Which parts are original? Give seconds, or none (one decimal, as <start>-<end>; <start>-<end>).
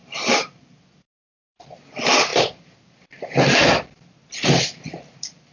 1.8-2.3; 3.3-5.5